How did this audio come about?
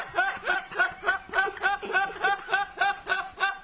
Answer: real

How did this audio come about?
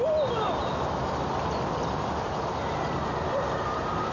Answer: real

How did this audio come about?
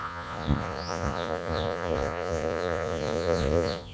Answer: fake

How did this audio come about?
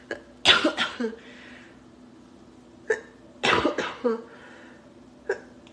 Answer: real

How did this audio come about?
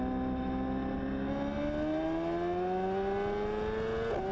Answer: real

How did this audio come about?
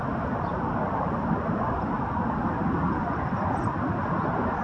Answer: real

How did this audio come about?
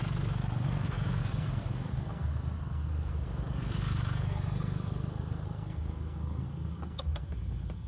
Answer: fake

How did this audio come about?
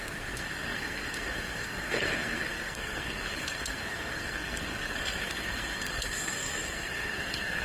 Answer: fake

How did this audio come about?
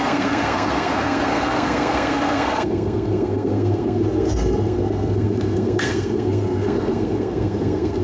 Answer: fake